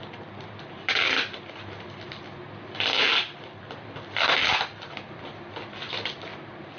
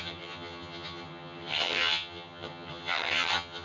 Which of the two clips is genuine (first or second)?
first